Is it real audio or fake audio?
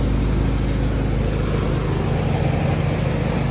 real